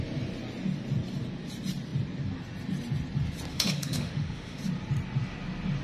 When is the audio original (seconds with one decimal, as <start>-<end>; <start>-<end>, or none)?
0.0-3.5; 4.6-5.8